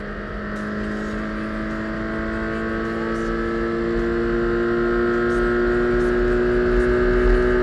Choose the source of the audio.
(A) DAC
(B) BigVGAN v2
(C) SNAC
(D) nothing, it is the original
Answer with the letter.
D